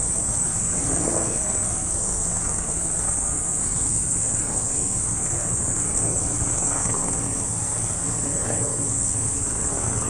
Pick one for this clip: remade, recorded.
remade